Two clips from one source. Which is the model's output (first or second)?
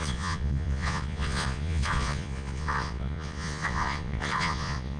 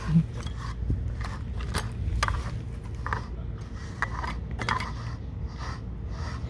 first